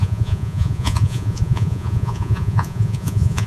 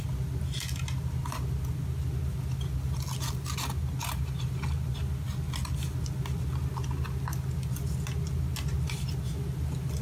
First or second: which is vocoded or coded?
first